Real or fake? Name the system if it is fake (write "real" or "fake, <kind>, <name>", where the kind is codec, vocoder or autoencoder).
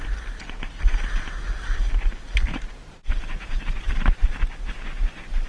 real